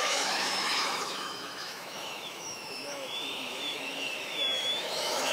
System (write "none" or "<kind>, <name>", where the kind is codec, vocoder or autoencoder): autoencoder, DAC-VAE